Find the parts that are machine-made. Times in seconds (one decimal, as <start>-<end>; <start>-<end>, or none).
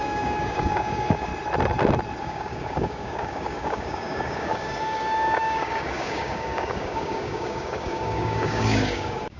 0.0-1.3; 2.2-9.4